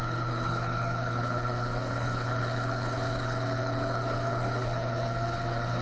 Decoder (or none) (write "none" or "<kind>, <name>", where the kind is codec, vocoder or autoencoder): codec, HILCodec